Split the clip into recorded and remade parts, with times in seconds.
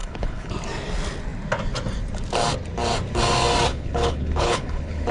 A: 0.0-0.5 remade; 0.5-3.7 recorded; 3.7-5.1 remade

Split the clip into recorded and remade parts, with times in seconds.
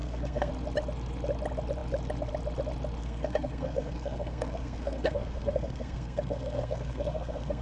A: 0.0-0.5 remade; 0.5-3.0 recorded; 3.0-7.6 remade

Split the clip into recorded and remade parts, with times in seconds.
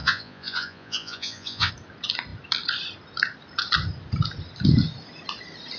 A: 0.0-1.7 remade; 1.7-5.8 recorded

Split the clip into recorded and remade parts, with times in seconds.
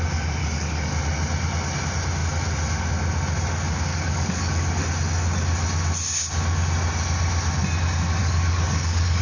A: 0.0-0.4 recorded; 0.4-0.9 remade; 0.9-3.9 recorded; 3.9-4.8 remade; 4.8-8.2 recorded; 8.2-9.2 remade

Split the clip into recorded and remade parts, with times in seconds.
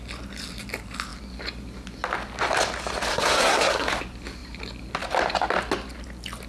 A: 0.0-3.1 recorded; 3.1-3.9 remade; 3.9-6.5 recorded